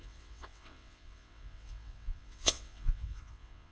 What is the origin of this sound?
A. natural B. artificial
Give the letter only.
B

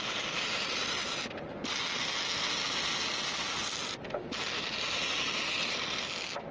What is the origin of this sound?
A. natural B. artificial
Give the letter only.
A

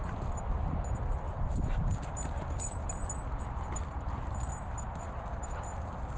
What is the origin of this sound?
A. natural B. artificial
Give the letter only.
A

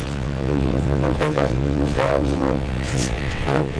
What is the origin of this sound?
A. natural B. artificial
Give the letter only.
B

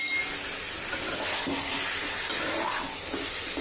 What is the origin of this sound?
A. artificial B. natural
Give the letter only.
B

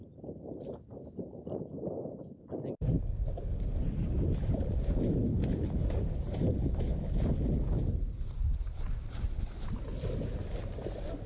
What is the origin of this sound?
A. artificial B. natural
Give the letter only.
B